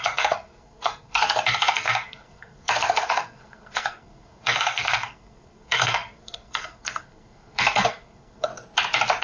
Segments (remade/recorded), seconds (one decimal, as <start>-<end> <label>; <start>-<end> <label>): 0.0-8.5 remade; 8.5-9.2 recorded